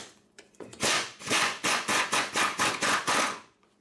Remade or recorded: remade